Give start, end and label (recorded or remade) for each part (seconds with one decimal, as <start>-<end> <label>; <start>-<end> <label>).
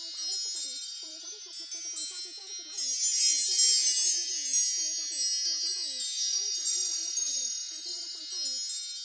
0.0-0.8 recorded; 0.8-1.5 remade; 1.5-6.3 recorded; 6.3-8.2 remade; 8.2-9.0 recorded